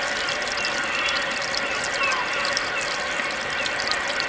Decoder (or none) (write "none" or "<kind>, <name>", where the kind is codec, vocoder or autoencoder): none